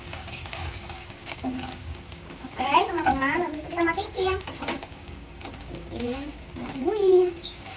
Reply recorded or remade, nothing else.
remade